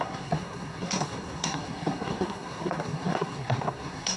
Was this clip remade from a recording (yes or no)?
yes